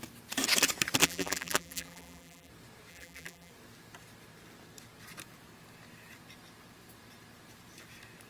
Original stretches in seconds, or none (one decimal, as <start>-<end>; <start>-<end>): 0.0-1.0; 2.5-2.9; 3.5-8.3